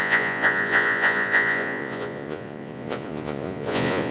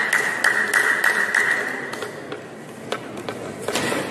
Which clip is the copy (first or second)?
first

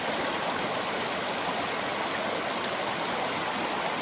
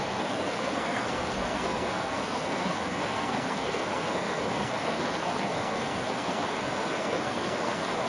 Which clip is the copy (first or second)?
second